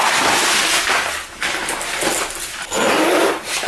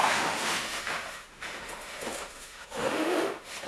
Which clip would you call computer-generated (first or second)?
second